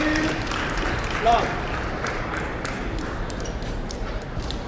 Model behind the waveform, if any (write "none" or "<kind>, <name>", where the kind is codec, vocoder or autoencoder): vocoder, BigVGAN v2